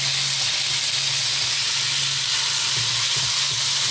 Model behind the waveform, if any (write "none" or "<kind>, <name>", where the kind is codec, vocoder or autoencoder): none